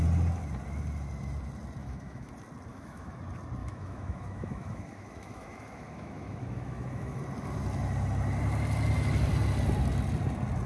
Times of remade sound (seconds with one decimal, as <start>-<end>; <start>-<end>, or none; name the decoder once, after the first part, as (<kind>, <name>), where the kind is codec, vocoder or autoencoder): 1.8-2.3 (autoencoder, DAC-VAE); 2.7-3.2; 3.6-7.2